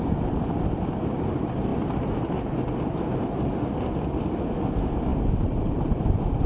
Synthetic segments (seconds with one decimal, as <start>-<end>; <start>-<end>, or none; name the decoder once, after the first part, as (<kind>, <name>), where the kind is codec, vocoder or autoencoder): 0.0-1.7 (vocoder, BigVGAN v2); 3.9-6.5